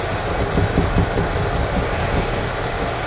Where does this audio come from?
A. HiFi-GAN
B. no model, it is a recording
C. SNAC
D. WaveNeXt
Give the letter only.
B